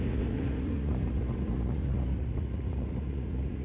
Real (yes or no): no